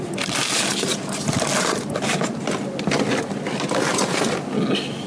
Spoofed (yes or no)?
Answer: no